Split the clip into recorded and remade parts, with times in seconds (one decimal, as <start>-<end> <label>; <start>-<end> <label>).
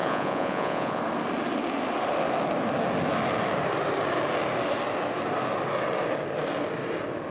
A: 0.0-1.0 remade; 1.0-7.3 recorded